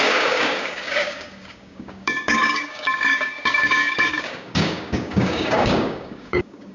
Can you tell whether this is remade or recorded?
remade